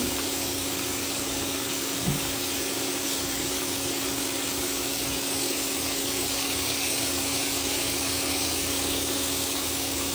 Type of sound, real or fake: fake